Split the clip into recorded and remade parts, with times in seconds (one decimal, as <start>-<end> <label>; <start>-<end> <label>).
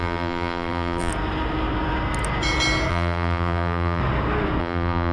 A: 0.0-1.1 remade; 1.1-2.9 recorded; 2.9-4.0 remade; 4.0-4.6 recorded; 4.6-5.1 remade